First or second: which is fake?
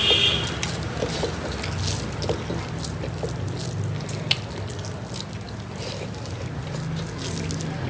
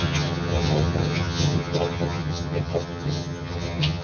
second